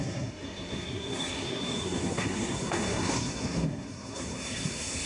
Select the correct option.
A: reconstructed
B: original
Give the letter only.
A